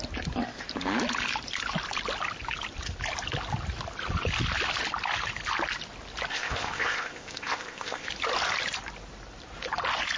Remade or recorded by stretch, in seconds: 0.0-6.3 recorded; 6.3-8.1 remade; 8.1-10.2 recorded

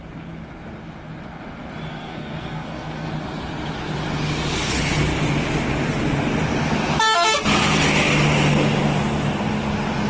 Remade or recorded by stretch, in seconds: 0.0-1.9 recorded; 1.9-3.1 remade; 3.1-10.1 recorded

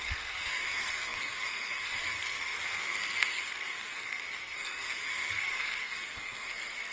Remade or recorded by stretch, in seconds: 0.0-6.9 remade